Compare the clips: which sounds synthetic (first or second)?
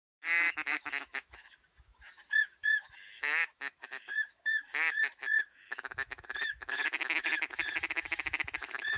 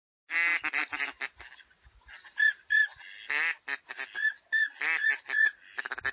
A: first